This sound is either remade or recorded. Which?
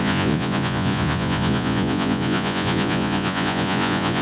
remade